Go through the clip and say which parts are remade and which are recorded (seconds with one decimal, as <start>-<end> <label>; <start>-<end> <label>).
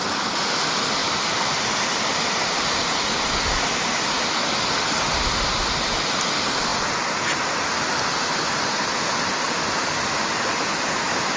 0.0-11.4 recorded